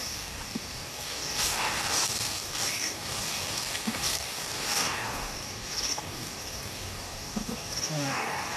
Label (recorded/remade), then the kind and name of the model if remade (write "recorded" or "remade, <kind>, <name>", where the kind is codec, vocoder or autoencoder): remade, codec, DAC